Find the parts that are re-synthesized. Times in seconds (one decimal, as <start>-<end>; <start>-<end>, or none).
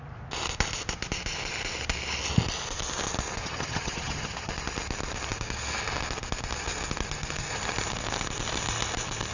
3.4-4.5